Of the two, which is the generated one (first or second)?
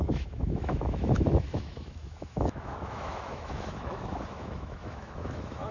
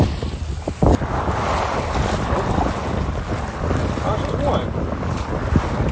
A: first